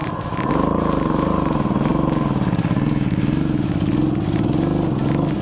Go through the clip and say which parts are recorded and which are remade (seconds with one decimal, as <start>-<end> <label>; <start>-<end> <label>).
0.0-5.4 recorded